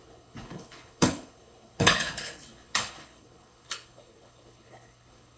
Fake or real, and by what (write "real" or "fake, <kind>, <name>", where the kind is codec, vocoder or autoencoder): fake, codec, HILCodec